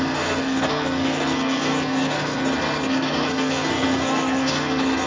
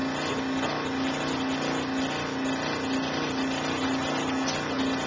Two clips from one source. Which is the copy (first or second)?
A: first